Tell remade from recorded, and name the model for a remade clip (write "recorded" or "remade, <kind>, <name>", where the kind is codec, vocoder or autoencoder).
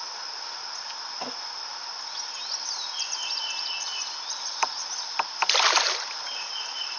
recorded